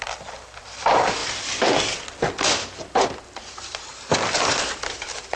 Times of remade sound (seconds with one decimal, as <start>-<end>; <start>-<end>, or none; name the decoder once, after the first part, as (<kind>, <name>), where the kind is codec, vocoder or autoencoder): none